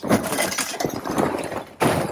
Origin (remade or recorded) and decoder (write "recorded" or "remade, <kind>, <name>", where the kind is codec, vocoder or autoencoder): remade, vocoder, BigVGAN v2